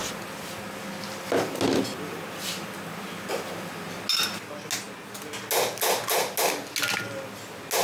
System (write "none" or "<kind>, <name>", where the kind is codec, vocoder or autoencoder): none